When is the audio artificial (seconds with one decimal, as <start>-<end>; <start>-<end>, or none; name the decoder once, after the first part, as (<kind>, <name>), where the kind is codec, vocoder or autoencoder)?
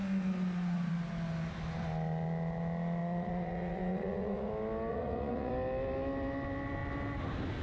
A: 3.0-4.5 (vocoder, Vocos); 4.9-5.5